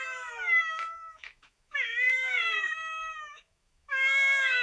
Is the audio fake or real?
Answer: fake